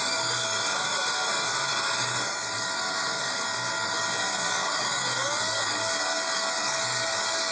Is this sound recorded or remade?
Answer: remade